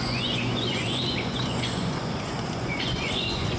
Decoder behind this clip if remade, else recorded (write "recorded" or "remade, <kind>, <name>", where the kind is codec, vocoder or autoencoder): remade, vocoder, Vocos